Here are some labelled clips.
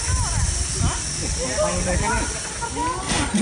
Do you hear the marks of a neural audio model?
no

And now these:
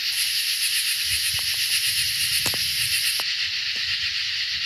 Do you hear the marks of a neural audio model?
no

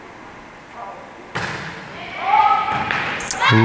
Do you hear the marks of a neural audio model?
no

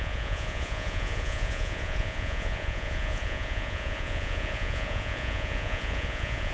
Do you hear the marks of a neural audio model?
yes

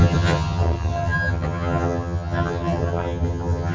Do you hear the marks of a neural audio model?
yes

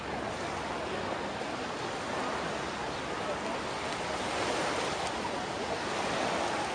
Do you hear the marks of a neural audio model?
no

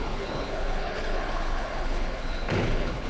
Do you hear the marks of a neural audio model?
yes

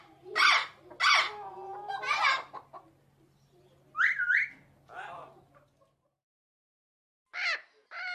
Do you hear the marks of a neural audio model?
no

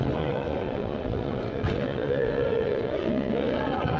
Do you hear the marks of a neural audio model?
yes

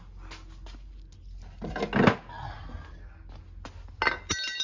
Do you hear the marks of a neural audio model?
no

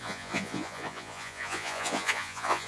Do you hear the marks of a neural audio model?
yes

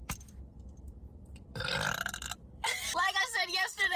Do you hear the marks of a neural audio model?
yes